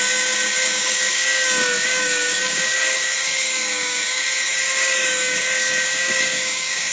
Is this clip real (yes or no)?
no